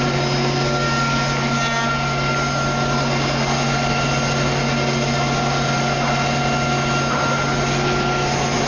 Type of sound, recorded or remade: recorded